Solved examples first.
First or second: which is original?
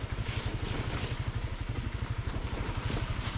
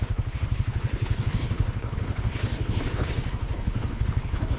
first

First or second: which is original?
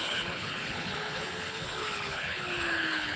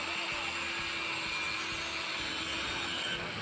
second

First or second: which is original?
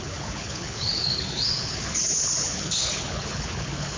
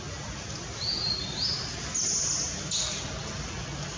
second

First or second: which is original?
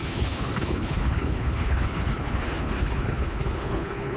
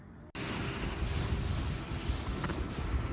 second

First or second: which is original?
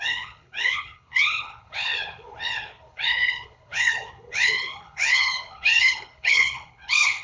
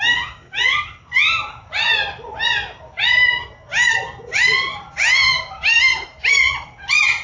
second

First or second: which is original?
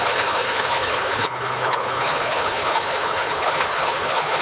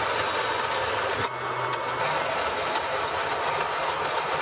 second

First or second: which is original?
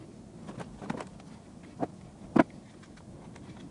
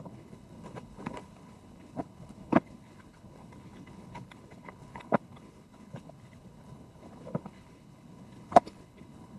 first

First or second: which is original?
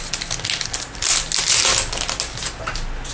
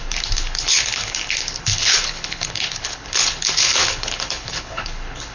first